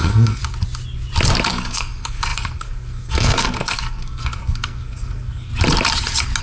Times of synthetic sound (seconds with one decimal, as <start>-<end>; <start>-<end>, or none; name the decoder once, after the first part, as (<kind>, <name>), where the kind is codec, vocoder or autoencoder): 0.0-0.4 (codec, SNAC); 1.5-5.5